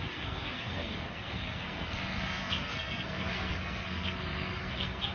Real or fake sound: fake